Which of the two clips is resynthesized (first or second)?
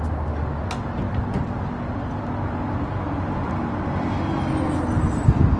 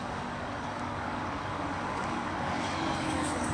second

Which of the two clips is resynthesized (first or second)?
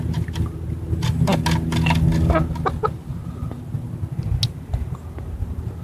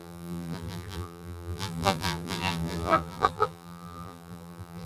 second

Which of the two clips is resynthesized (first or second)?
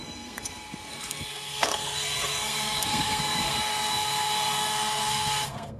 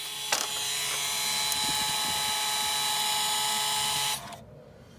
first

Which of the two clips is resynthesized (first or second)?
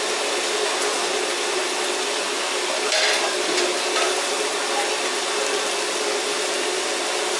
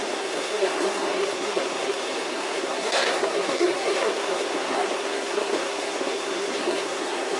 second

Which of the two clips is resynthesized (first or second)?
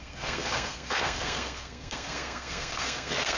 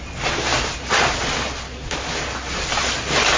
first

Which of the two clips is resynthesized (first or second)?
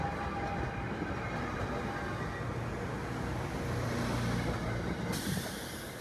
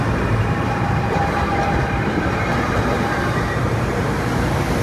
second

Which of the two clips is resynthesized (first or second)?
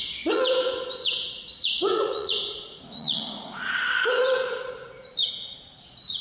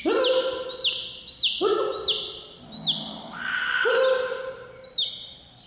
first